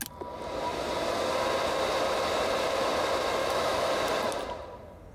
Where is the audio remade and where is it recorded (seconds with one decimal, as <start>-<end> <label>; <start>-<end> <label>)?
0.0-3.4 recorded; 3.4-3.9 remade; 3.9-5.1 recorded